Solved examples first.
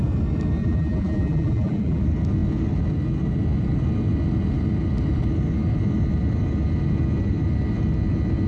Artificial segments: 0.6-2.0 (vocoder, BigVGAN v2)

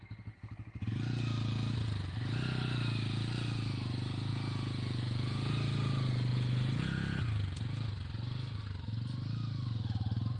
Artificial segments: 4.3-5.5 (vocoder, Vocos); 6.3-7.2